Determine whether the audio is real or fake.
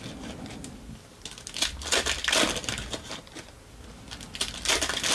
real